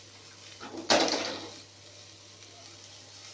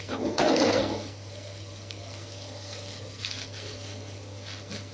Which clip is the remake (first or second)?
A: second